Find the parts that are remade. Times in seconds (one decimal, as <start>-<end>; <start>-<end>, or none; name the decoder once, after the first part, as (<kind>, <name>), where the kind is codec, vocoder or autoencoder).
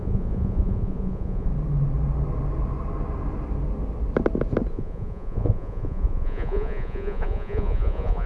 0.0-1.5 (vocoder, Vocos); 4.7-8.3